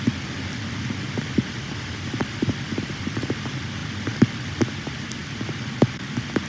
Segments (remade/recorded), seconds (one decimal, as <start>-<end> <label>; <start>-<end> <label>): 0.0-2.7 recorded; 2.7-3.4 remade; 3.4-3.8 recorded; 3.8-4.6 remade; 4.6-5.2 recorded; 5.2-6.5 remade